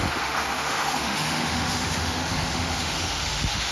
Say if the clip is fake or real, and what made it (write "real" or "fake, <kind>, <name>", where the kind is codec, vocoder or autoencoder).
fake, autoencoder, DAC-VAE